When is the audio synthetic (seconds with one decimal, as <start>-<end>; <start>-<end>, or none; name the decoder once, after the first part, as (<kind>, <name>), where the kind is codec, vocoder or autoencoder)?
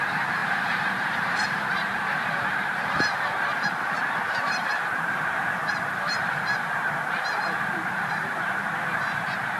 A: 0.0-9.6 (vocoder, BigVGAN v2)